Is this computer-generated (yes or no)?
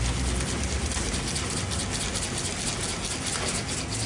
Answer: no